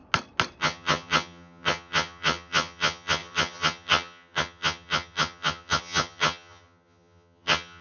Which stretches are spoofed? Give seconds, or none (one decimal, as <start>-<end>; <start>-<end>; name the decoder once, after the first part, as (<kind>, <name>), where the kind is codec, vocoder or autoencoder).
0.6-7.8 (vocoder, HiFi-GAN)